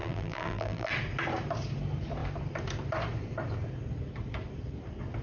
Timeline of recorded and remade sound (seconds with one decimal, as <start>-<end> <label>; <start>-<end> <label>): 0.0-0.9 remade; 0.9-5.2 recorded